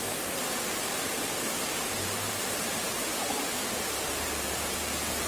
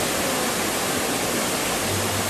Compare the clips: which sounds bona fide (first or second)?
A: second